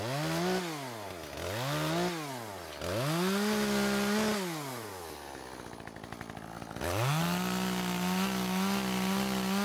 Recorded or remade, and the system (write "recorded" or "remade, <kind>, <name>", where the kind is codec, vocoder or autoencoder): recorded